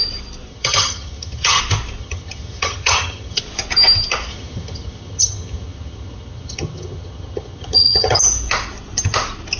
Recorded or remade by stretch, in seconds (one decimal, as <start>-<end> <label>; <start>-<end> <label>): 0.0-0.5 recorded; 0.5-1.6 remade; 1.6-2.0 recorded; 2.0-3.4 remade; 3.4-4.3 recorded; 4.3-8.2 remade; 8.2-9.6 recorded